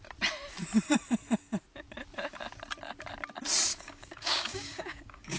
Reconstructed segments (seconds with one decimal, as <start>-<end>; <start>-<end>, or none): 3.7-5.4